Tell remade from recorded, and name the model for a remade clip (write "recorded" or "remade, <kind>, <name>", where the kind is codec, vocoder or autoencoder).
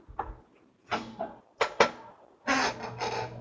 recorded